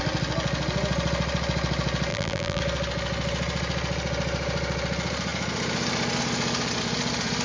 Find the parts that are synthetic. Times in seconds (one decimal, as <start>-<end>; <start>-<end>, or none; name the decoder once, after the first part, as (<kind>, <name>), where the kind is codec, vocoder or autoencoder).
2.1-2.6 (vocoder, BigVGAN v2)